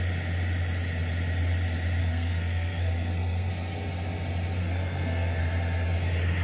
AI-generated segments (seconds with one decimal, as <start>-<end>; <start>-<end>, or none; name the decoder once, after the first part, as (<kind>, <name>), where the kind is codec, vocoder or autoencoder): 2.0-3.5 (codec, SNAC); 4.6-5.4